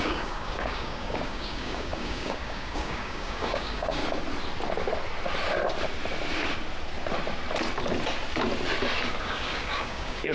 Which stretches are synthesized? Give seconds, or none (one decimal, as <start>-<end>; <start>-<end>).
0.0-4.0; 9.2-10.3